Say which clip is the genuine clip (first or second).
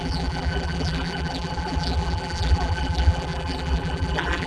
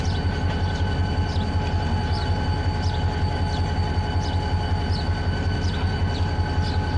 second